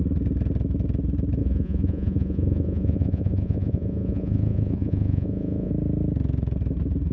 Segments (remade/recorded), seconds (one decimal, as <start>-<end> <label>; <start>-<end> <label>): 0.0-1.4 recorded; 1.4-5.7 remade; 5.7-7.1 recorded